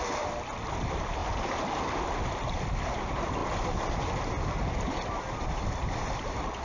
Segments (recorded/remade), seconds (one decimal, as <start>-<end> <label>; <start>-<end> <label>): 0.0-6.6 recorded